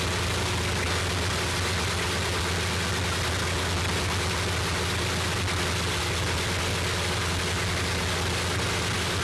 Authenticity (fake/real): real